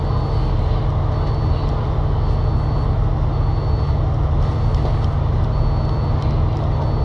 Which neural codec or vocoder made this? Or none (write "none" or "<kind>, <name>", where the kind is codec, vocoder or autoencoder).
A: none